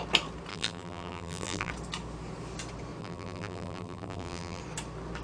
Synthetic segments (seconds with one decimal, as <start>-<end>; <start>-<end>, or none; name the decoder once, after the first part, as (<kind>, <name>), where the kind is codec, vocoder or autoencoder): 0.5-1.7 (vocoder, BigVGAN v2); 3.0-4.6